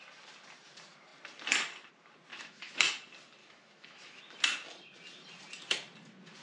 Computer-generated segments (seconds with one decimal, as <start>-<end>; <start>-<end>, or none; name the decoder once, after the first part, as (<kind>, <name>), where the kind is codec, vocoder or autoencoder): 2.3-2.9 (autoencoder, DAC-VAE); 3.4-4.2